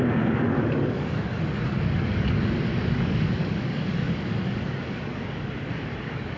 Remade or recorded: remade